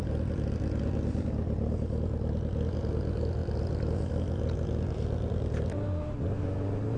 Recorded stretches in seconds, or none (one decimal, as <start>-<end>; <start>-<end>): 0.0-7.0